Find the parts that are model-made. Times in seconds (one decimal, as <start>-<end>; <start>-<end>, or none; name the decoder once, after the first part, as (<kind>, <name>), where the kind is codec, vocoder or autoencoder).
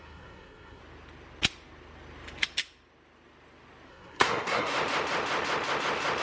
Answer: 0.0-0.8 (codec, SNAC); 3.9-4.7